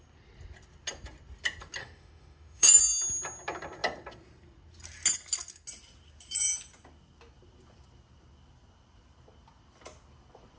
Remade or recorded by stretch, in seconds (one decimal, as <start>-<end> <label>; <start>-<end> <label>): 0.0-1.8 recorded; 1.8-2.8 remade; 2.8-10.6 recorded